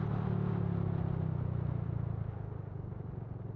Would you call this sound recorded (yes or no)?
yes